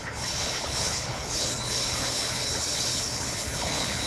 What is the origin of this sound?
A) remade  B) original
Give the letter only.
A